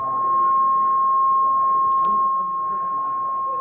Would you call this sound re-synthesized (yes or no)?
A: no